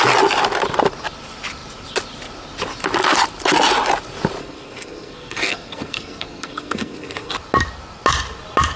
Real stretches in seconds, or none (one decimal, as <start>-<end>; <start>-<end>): 0.0-4.4; 7.3-8.8